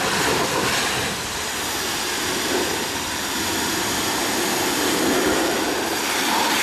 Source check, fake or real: real